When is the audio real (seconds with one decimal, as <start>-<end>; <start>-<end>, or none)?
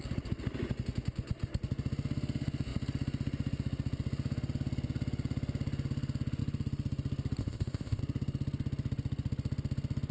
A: 0.0-7.4; 8.0-10.1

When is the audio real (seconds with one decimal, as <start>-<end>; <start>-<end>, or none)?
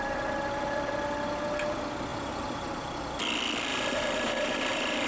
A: 0.0-2.1; 3.2-3.7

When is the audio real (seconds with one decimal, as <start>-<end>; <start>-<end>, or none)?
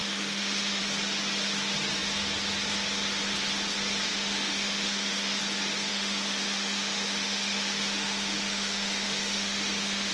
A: 0.8-4.1; 5.4-5.9